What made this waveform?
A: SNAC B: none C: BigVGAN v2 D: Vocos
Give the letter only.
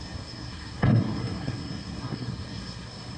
A